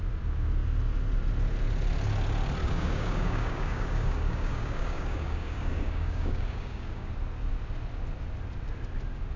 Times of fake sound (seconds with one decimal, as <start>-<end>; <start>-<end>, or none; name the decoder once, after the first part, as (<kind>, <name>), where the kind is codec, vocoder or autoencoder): 2.6-7.1 (codec, DAC)